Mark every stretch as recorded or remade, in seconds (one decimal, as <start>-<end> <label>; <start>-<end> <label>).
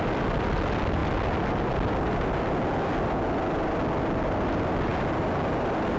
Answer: 0.0-6.0 recorded